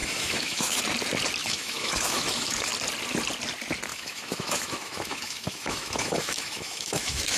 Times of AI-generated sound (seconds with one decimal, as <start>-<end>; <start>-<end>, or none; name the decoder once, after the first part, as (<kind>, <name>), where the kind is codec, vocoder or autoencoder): 0.0-0.8 (autoencoder, DAC-VAE); 1.4-2.7; 3.9-7.4